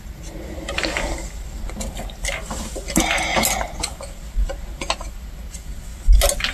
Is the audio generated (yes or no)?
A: no